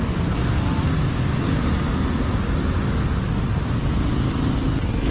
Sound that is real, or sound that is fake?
real